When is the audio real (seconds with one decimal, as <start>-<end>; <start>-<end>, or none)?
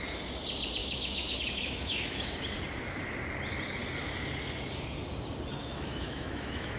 0.0-0.8; 2.3-5.6